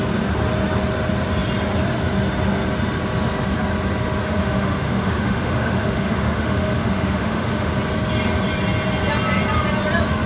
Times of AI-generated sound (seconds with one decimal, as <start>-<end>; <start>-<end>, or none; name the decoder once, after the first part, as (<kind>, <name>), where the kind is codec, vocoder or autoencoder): 4.2-7.7 (autoencoder, DAC-VAE)